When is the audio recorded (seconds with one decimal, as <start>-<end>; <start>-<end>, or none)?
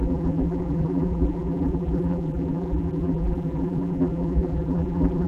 none